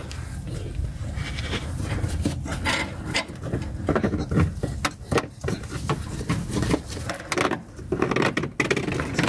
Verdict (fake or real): real